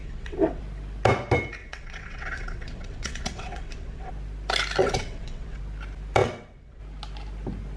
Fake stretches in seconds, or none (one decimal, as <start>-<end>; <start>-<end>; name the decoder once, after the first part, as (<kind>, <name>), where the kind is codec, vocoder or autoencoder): 0.0-0.6 (vocoder, WaveNeXt); 1.6-4.1; 4.8-5.6; 6.2-6.8